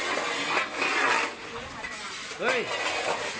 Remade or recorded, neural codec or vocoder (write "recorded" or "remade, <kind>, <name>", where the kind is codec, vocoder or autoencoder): recorded